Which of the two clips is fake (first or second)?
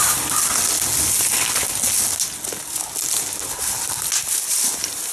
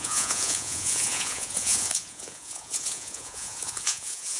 second